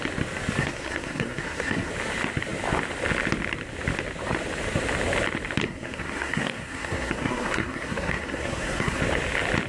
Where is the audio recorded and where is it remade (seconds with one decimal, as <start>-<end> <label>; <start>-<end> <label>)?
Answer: 0.0-0.6 recorded; 0.6-1.9 remade; 1.9-5.6 recorded; 5.6-9.0 remade; 9.0-9.7 recorded